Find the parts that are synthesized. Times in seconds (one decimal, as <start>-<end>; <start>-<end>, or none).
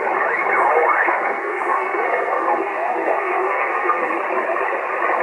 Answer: 1.0-4.1